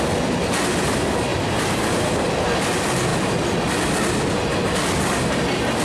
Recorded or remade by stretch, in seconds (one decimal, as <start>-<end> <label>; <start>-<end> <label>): 0.0-1.3 recorded; 1.3-2.1 remade; 2.1-5.8 recorded